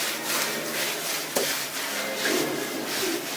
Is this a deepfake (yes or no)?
yes